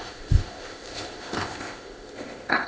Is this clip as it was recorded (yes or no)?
no